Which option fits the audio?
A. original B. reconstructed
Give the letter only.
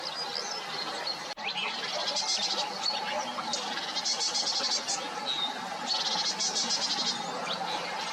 A